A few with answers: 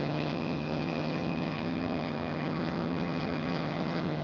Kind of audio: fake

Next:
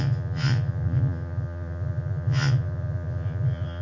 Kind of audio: fake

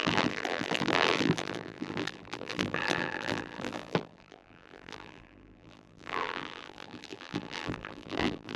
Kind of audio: fake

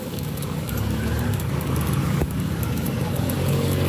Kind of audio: fake